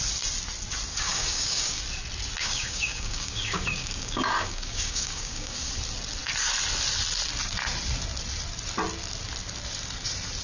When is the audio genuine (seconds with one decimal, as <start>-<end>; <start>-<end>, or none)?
0.0-0.9; 1.8-2.4; 5.7-10.4